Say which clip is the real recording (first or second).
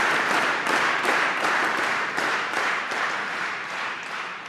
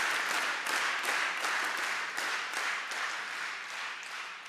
second